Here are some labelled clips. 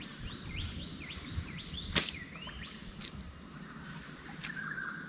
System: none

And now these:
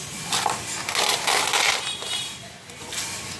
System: none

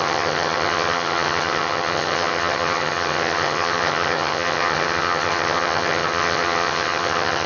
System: vocoder, HiFi-GAN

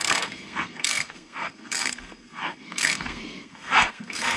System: codec, SNAC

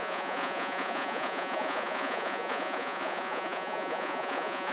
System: vocoder, Vocos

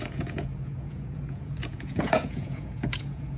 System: vocoder, Vocos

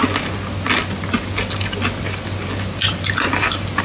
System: none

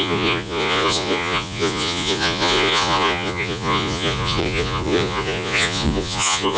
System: vocoder, Vocos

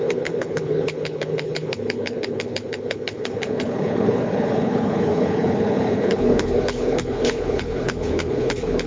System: codec, HILCodec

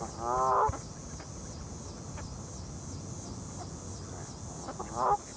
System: none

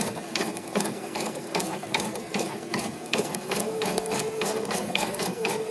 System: codec, SNAC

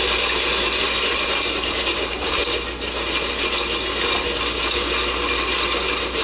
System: none